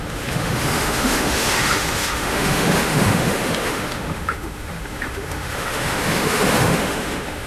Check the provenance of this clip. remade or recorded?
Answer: remade